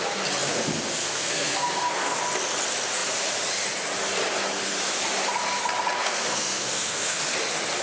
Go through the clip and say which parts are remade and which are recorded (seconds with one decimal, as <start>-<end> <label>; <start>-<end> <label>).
0.0-1.0 recorded; 1.0-2.2 remade; 2.2-6.0 recorded; 6.0-7.2 remade; 7.2-7.8 recorded